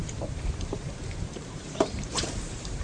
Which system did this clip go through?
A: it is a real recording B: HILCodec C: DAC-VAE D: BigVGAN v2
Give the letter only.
D